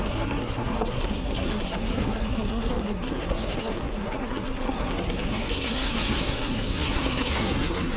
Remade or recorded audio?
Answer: remade